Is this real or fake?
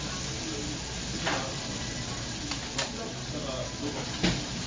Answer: real